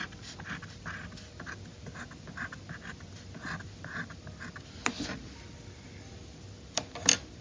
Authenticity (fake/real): real